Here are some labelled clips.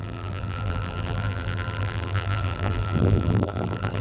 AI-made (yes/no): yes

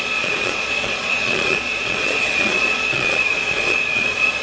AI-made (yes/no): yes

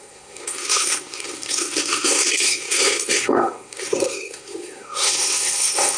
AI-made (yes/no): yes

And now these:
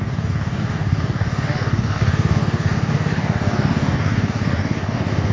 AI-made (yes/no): yes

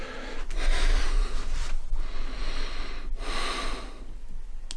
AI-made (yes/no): no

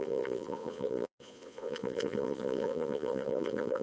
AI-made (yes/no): yes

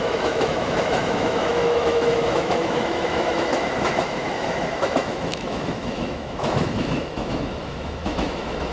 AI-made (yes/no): yes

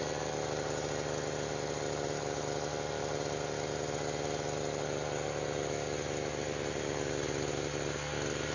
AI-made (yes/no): no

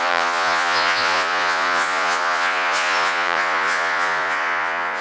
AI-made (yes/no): yes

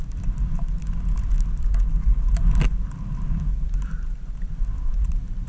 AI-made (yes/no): no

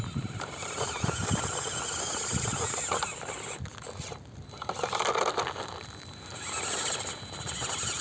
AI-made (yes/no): no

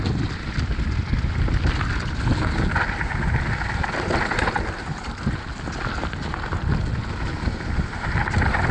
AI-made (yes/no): no